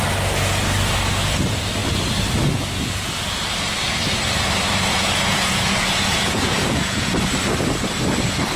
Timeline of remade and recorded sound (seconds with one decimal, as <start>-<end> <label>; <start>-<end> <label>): 0.0-4.9 recorded; 4.9-7.2 remade; 7.2-8.6 recorded